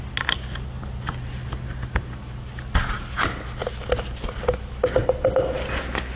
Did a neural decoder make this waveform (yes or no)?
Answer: no